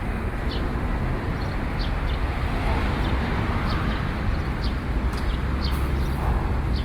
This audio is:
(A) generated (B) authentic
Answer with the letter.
B